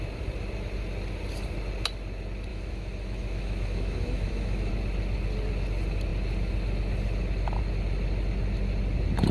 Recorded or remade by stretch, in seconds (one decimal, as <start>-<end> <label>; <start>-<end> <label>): 0.0-2.5 recorded; 2.5-4.7 remade; 4.7-9.3 recorded